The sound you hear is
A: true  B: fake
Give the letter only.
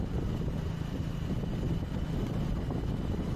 A